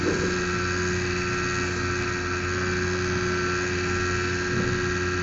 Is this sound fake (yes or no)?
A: no